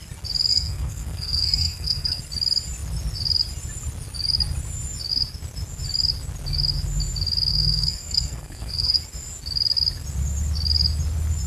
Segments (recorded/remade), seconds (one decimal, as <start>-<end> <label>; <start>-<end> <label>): 0.0-0.5 recorded; 0.5-2.2 remade; 2.2-7.5 recorded; 7.5-9.0 remade; 9.0-11.5 recorded